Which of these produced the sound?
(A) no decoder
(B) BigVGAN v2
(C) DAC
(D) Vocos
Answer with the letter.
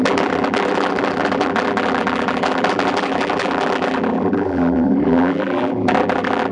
B